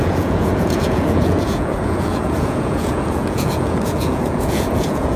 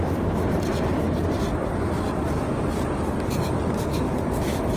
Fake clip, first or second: first